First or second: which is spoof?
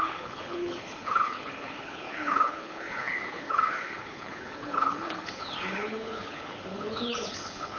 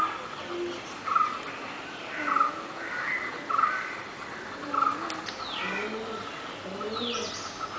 first